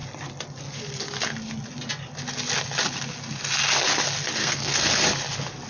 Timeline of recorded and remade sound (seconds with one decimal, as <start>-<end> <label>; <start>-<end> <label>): 0.0-4.4 recorded; 4.4-5.0 remade; 5.0-5.7 recorded